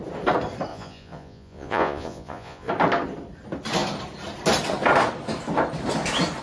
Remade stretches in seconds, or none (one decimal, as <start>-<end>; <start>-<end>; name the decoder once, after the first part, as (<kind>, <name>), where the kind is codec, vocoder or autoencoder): 0.7-2.7 (vocoder, Vocos)